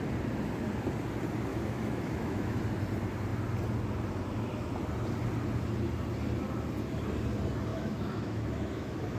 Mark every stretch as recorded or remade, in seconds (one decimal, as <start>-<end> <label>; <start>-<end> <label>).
0.0-1.5 recorded; 1.5-2.6 remade; 2.6-7.7 recorded; 7.7-9.2 remade